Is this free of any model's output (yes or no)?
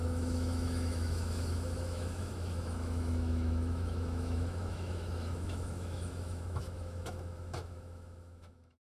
no